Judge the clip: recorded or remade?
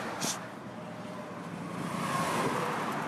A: remade